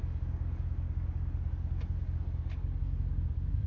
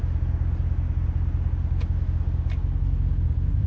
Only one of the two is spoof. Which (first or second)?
first